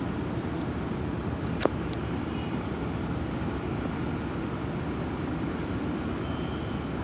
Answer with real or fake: real